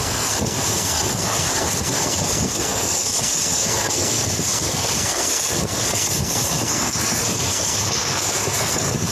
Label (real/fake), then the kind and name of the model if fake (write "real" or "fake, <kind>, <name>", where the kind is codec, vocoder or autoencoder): fake, codec, SNAC